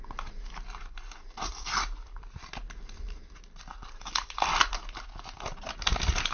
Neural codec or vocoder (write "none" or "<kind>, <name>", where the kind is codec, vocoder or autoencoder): none